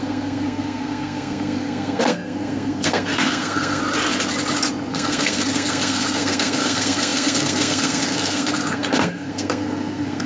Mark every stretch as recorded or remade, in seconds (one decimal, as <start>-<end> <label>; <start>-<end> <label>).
0.0-3.8 remade; 3.8-4.9 recorded; 4.9-10.3 remade